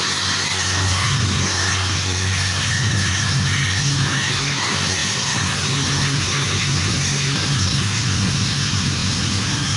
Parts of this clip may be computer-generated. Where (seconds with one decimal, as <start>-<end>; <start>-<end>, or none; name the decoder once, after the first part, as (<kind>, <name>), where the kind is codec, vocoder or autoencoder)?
0.0-9.8 (codec, SNAC)